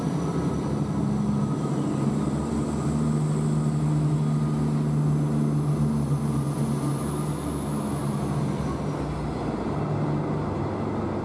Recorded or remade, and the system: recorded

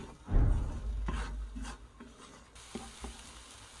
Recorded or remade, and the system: recorded